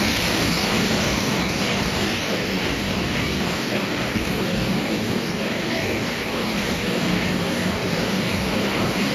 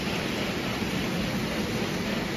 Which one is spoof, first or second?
first